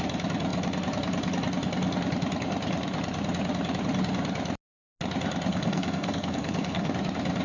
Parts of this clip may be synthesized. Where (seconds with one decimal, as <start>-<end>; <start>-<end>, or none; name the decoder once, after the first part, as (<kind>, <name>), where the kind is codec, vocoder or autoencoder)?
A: 5.5-6.9 (codec, SNAC)